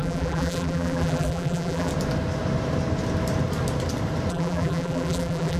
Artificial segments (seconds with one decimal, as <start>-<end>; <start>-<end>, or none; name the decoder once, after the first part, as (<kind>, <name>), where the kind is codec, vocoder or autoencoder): 0.0-1.9 (vocoder, BigVGAN v2); 4.3-5.6